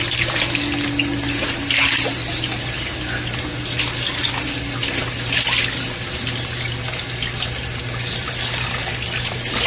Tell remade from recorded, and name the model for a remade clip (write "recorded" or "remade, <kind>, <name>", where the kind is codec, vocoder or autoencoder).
recorded